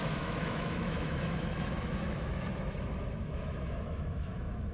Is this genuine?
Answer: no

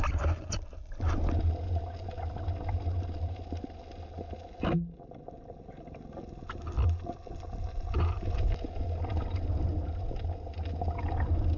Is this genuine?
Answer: yes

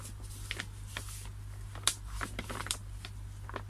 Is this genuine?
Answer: yes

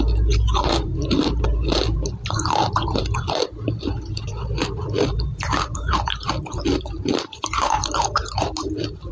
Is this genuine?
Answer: yes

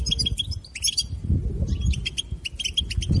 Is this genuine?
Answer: yes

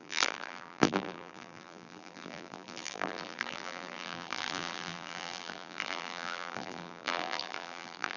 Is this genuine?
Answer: no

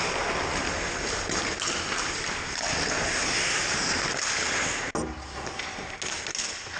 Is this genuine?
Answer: yes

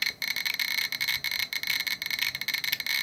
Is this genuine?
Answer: yes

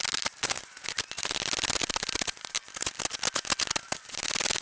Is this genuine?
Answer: yes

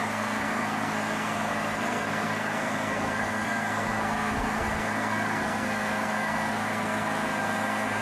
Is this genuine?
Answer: no